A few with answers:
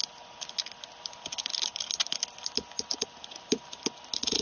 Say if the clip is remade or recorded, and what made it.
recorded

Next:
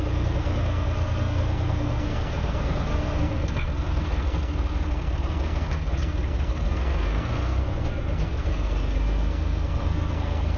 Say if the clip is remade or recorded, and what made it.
remade, codec, SNAC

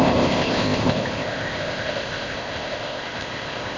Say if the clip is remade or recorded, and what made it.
remade, codec, ZipCodec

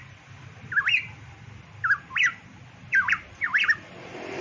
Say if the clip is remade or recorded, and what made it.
recorded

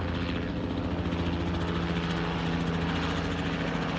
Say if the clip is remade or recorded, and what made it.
recorded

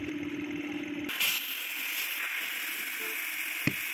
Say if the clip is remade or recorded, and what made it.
recorded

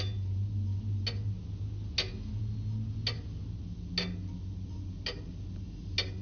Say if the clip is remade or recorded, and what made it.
recorded